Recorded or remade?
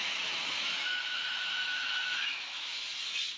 remade